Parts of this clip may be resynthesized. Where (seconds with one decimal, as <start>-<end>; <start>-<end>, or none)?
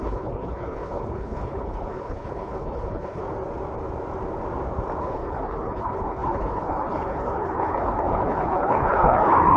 0.0-3.2; 5.0-9.6